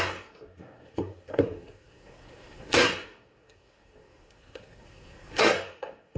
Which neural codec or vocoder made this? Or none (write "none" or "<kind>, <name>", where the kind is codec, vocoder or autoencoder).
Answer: codec, SNAC